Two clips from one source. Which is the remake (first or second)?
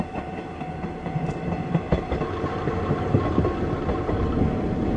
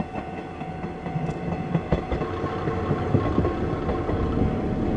first